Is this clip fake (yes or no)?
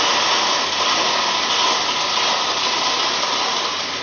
no